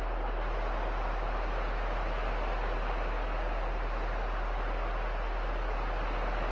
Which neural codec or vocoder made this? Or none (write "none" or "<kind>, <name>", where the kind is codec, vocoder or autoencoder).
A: none